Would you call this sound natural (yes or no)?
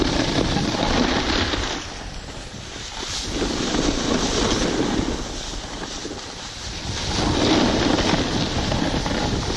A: yes